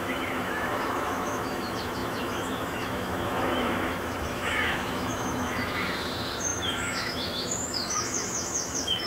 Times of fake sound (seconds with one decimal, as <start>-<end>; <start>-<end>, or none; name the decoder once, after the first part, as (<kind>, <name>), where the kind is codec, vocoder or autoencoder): 0.0-9.1 (autoencoder, DAC-VAE)